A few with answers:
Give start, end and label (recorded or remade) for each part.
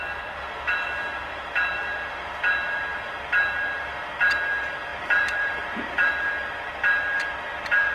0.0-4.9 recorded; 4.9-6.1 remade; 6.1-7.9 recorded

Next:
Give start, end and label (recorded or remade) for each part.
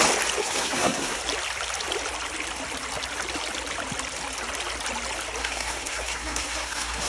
0.0-0.4 recorded; 0.4-1.2 remade; 1.2-5.4 recorded; 5.4-7.1 remade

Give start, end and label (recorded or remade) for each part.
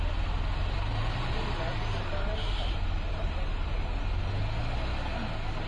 0.0-0.9 recorded; 0.9-4.3 remade; 4.3-5.7 recorded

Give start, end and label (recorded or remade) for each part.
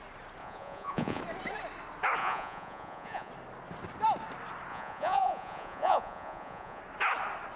0.0-0.4 recorded; 0.4-1.2 remade; 1.2-2.2 recorded; 2.2-3.3 remade; 3.3-4.7 recorded; 4.7-6.8 remade; 6.8-7.6 recorded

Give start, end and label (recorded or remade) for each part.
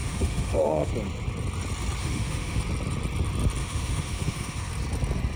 0.0-0.9 remade; 0.9-2.0 recorded; 2.0-2.6 remade; 2.6-3.6 recorded; 3.6-4.7 remade; 4.7-5.4 recorded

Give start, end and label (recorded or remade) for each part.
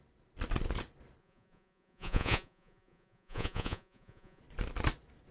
0.0-1.2 recorded; 1.2-4.4 remade; 4.4-5.3 recorded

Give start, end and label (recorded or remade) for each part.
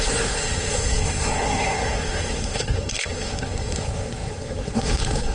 0.0-5.3 remade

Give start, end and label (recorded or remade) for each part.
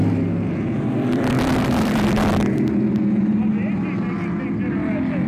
0.0-2.9 remade; 2.9-5.3 recorded